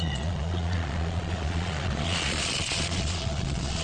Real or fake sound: fake